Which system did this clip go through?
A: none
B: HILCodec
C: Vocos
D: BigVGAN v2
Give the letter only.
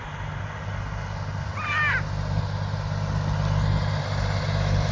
A